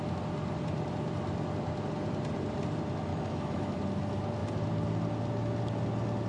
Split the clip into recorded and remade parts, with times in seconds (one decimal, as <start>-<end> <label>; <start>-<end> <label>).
0.0-3.1 recorded; 3.1-3.8 remade; 3.8-6.3 recorded